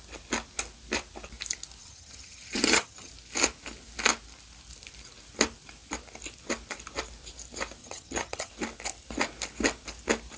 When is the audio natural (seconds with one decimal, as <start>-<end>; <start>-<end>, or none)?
0.0-1.8; 3.1-7.8; 8.5-10.4

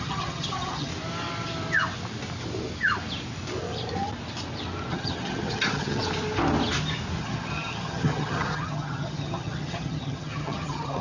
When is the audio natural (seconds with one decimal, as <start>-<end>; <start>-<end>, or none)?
0.9-4.9; 6.0-7.2

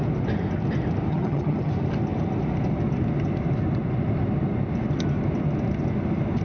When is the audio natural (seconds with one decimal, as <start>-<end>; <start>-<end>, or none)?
0.0-1.1; 1.7-6.4

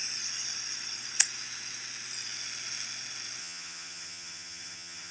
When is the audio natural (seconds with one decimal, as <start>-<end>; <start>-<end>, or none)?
0.0-3.4

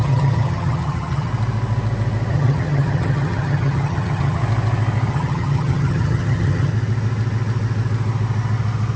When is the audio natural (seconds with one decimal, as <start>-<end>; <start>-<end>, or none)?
1.3-2.3; 4.4-5.1; 6.7-9.0

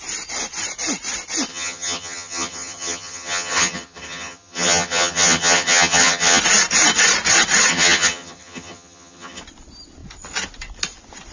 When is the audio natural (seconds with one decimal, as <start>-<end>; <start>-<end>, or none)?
0.0-1.5; 6.4-7.7; 9.4-11.3

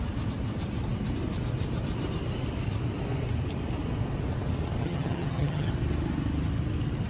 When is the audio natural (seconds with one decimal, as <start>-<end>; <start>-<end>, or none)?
0.0-4.8; 5.7-7.1